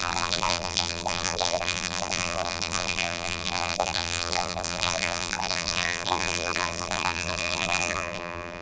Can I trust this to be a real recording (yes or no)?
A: no